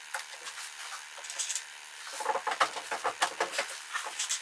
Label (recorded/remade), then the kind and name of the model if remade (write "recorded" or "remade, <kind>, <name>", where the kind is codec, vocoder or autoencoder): recorded